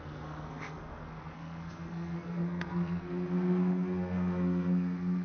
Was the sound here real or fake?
fake